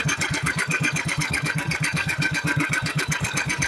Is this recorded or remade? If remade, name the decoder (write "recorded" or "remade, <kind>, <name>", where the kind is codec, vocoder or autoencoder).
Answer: remade, codec, SNAC